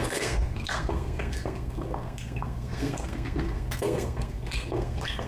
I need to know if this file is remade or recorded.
remade